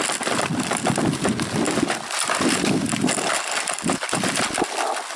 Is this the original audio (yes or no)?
yes